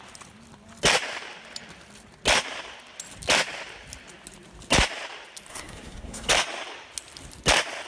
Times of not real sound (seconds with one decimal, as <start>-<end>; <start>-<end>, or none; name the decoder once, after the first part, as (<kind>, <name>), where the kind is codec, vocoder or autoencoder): 5.5-6.3 (codec, SNAC)

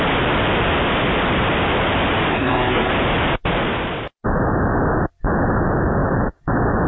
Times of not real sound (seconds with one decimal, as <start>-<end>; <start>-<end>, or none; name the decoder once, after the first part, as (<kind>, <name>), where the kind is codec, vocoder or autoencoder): 2.3-2.9 (codec, SNAC)

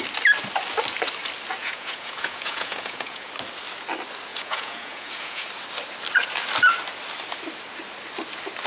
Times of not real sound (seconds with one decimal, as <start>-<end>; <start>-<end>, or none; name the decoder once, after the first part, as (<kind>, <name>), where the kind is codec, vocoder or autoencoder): 1.6-3.3 (vocoder, Vocos); 4.3-5.5

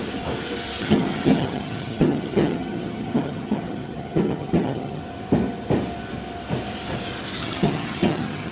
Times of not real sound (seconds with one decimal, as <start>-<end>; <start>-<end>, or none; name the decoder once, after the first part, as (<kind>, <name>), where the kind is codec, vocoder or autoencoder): 0.8-5.0 (vocoder, HiFi-GAN); 7.4-8.5

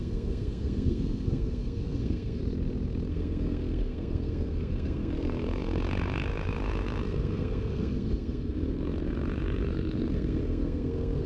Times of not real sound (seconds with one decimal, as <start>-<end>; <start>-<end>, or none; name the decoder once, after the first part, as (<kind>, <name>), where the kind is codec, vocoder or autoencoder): 0.0-2.4 (codec, SNAC); 3.1-11.3

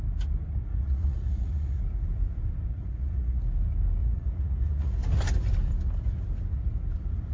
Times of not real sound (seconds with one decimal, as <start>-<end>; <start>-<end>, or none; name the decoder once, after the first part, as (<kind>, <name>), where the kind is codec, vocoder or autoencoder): 0.7-1.8 (vocoder, Vocos); 2.7-3.4; 4.0-5.0

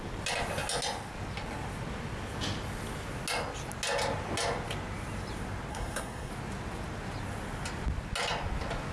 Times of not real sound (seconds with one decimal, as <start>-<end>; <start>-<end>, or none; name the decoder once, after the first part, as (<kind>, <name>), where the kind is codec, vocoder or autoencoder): 5.7-6.3 (codec, SNAC)

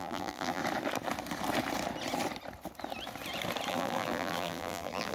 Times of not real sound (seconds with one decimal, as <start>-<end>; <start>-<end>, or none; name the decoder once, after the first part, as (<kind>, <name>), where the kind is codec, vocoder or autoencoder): 0.0-0.6 (vocoder, BigVGAN v2); 3.7-5.1